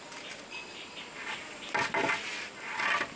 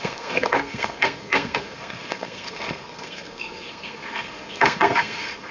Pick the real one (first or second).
first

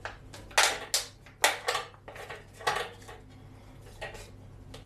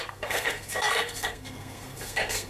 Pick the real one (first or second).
first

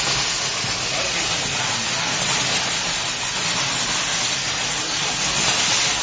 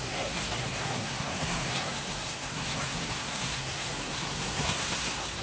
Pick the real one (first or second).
first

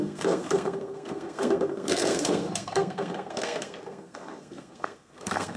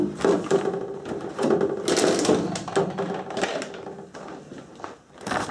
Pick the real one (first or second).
second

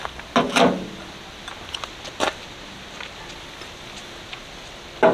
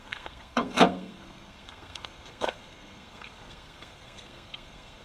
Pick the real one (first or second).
first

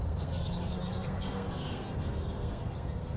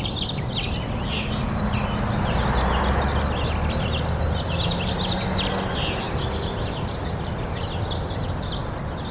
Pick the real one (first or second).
second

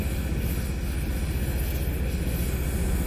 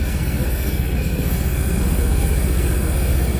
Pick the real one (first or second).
first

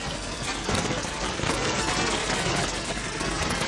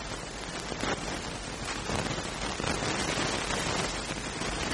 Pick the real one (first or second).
second